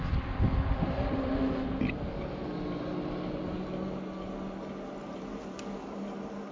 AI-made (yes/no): no